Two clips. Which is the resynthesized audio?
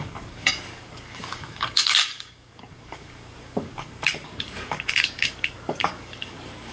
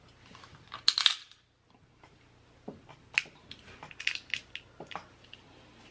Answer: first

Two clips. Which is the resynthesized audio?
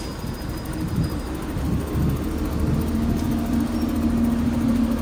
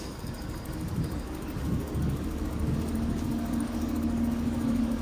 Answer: second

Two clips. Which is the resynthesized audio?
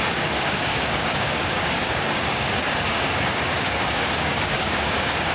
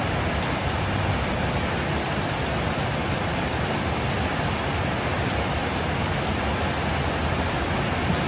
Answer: first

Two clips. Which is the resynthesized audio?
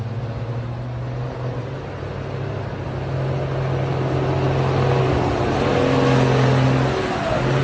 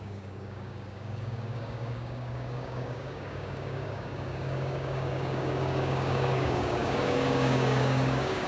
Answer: second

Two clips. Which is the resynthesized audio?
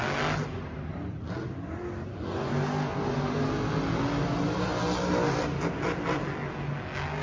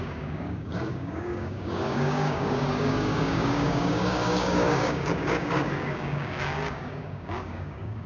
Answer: second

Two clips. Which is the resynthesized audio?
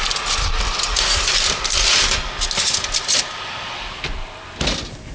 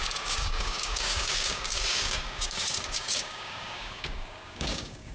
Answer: second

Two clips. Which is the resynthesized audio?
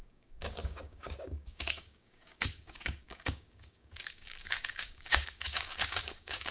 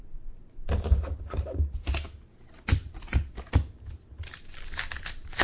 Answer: first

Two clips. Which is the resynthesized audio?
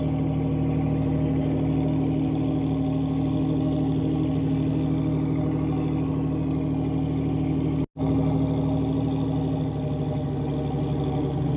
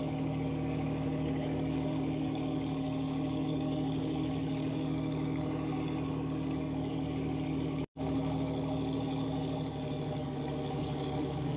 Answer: second